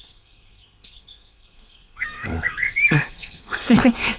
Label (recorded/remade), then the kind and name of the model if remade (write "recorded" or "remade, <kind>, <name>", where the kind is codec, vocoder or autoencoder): remade, codec, SNAC